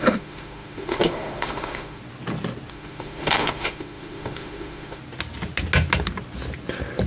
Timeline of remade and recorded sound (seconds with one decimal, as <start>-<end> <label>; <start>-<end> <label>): 0.0-2.0 remade; 2.0-2.7 recorded; 2.7-5.0 remade; 5.0-7.1 recorded